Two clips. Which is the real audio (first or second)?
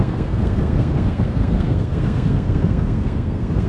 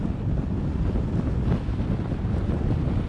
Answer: second